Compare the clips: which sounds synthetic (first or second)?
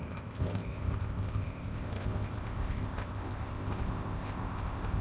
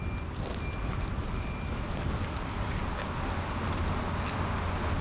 first